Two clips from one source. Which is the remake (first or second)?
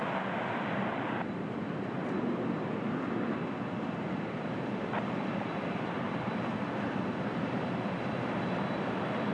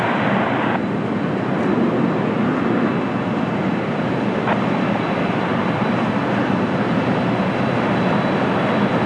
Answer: first